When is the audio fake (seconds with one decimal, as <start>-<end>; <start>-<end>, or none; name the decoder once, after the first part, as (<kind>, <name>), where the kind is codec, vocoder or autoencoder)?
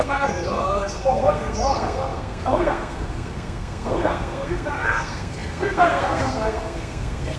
0.0-7.4 (codec, SNAC)